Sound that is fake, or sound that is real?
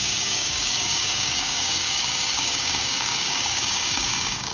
fake